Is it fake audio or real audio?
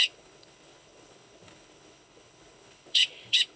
fake